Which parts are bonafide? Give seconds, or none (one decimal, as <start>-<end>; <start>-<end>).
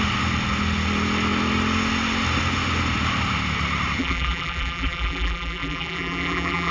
0.0-4.0